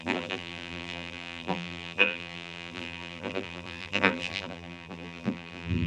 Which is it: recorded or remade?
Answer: remade